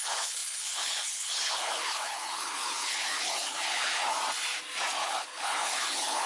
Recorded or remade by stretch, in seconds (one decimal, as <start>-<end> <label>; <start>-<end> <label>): 0.0-4.0 remade; 4.0-5.0 recorded; 5.0-6.3 remade